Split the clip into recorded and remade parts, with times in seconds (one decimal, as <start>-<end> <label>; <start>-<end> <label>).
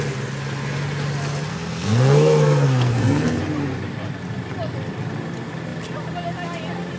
0.0-1.5 recorded; 1.5-3.4 remade; 3.4-7.0 recorded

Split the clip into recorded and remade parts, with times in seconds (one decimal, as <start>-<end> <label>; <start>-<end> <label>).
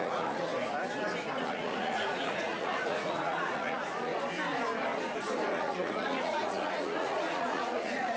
0.0-0.5 remade; 0.5-1.4 recorded; 1.4-4.1 remade; 4.1-5.5 recorded; 5.5-8.2 remade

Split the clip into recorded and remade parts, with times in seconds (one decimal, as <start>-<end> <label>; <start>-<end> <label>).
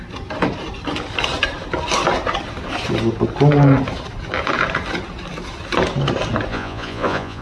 0.0-6.5 recorded; 6.5-7.4 remade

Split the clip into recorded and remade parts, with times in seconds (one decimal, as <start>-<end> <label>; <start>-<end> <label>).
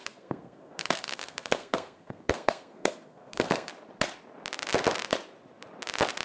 0.0-3.7 remade; 3.7-6.2 recorded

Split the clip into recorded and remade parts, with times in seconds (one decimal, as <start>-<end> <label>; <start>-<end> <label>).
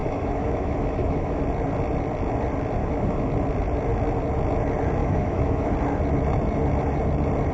0.0-1.4 remade; 1.4-2.8 recorded; 2.8-3.3 remade; 3.3-5.0 recorded; 5.0-5.7 remade; 5.7-7.5 recorded